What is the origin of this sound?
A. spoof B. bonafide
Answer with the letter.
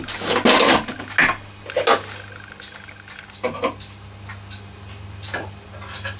B